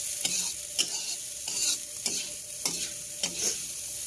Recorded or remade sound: recorded